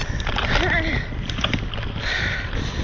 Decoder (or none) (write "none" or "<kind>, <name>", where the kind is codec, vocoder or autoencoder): none